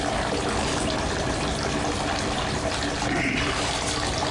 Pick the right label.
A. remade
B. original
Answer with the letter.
B